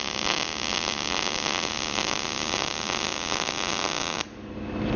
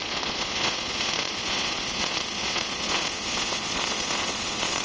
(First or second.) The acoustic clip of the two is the first